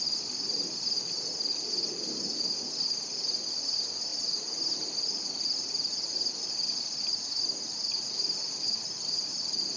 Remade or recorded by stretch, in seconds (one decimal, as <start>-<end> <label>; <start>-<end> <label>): 0.0-9.8 recorded